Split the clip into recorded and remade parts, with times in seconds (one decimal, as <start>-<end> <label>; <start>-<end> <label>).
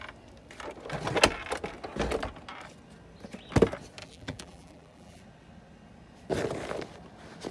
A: 0.0-4.0 recorded; 4.0-5.2 remade; 5.2-7.5 recorded